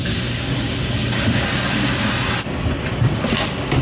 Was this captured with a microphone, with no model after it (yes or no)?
no